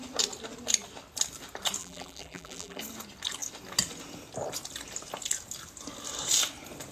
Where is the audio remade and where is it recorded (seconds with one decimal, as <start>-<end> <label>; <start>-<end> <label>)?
0.0-1.8 recorded; 1.8-2.8 remade; 2.8-6.9 recorded